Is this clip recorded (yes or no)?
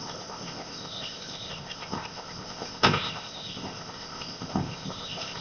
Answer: no